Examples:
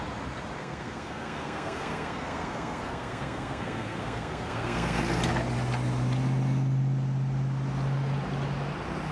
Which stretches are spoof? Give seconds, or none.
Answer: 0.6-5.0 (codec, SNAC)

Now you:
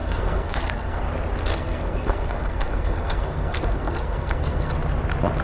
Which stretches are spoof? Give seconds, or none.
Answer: 0.0-1.0 (codec, SNAC); 1.5-4.7

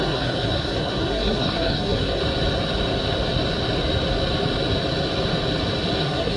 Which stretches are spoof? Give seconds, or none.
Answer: 0.0-2.2 (codec, SNAC); 6.0-6.4

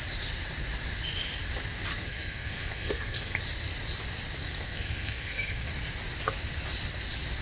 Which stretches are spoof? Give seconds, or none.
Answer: 1.9-3.4 (codec, SNAC); 4.4-5.7

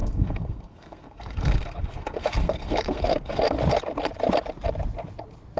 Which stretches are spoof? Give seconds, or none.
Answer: 0.0-3.4 (codec, SNAC)

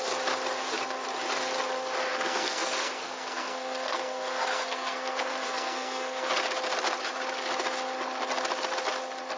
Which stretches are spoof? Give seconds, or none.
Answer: 2.1-6.3 (codec, SNAC)

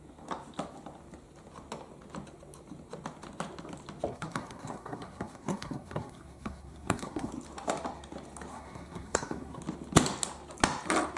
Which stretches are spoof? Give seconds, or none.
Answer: 4.1-7.3 (codec, SNAC); 8.5-9.6

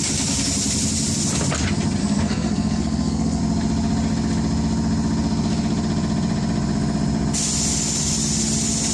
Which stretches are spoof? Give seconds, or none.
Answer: 2.0-3.4 (codec, SNAC)